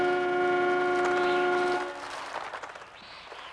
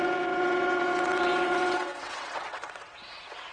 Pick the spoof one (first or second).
second